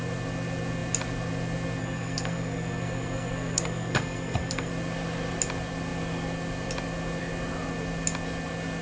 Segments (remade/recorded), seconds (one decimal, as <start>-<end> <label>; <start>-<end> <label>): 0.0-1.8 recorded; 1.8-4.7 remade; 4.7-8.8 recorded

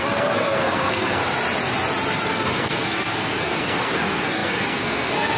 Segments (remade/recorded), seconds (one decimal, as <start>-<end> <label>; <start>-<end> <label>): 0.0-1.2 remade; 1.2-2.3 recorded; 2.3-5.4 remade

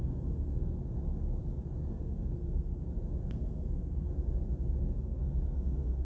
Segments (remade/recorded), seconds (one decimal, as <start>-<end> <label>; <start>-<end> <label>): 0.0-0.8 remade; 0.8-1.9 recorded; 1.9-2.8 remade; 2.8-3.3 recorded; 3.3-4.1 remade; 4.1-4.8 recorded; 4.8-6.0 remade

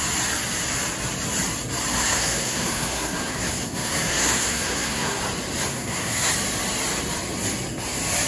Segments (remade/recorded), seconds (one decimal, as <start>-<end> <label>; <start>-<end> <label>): 0.0-1.9 recorded; 1.9-5.2 remade; 5.2-5.7 recorded; 5.7-6.3 remade; 6.3-8.3 recorded

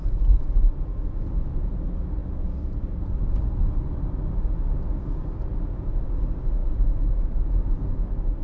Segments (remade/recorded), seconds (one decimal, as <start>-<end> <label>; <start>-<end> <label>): 0.0-8.4 recorded

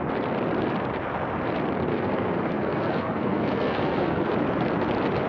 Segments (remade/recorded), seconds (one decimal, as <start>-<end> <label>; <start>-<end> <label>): 0.0-1.9 recorded; 1.9-4.3 remade; 4.3-5.3 recorded

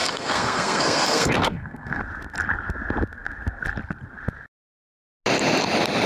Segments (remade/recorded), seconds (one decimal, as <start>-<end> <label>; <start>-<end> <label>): 0.0-2.0 remade; 2.0-6.1 recorded